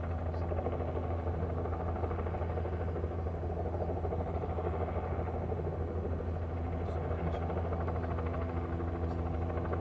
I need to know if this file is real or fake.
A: real